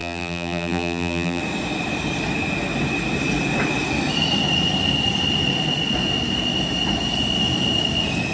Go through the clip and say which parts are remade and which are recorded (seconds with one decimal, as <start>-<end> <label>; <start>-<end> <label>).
0.0-1.4 remade; 1.4-8.3 recorded